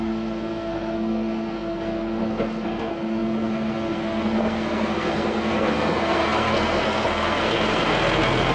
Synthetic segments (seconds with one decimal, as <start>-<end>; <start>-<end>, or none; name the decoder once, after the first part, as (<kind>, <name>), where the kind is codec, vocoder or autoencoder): 0.0-8.5 (codec, SNAC)